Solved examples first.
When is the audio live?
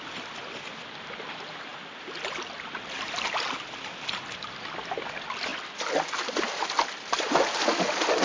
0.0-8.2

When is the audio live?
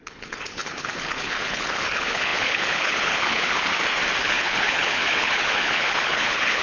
3.7-4.2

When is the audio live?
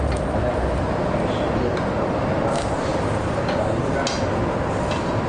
0.0-5.3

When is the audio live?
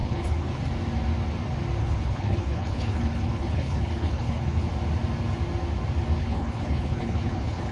0.6-1.8; 4.7-6.2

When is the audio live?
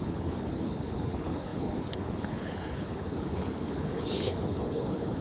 none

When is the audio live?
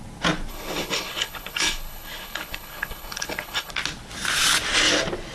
0.0-0.5; 3.7-5.3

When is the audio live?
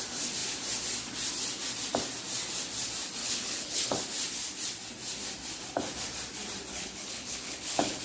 0.0-3.2; 4.0-6.7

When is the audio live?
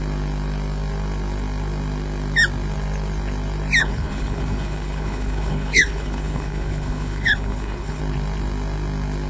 0.0-3.8; 8.0-9.3